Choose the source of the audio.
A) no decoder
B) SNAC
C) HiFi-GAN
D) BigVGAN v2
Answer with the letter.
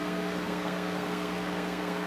B